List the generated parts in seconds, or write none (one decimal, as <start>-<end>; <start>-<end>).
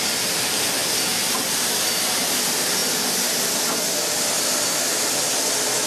0.8-1.7